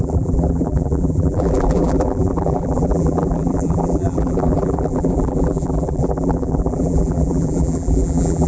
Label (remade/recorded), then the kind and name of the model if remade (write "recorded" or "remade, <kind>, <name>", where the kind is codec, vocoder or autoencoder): remade, vocoder, BigVGAN v2